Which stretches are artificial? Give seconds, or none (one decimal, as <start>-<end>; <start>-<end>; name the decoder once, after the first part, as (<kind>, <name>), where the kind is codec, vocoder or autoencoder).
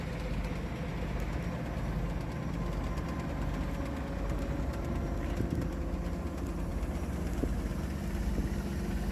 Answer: none